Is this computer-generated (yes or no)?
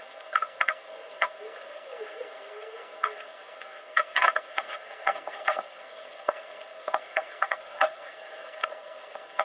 yes